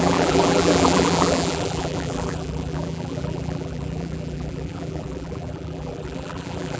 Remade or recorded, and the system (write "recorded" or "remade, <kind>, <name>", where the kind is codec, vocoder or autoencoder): remade, vocoder, BigVGAN v2